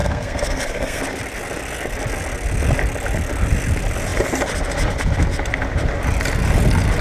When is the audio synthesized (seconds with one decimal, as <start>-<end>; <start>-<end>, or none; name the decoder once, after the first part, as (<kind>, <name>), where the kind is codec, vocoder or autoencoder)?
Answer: 0.0-1.0 (codec, SNAC)